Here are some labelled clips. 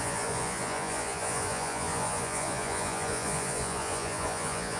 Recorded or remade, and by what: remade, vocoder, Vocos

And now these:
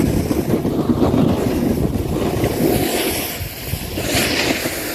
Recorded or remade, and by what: recorded